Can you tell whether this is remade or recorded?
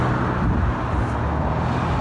recorded